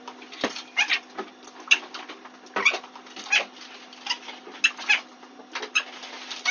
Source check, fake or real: real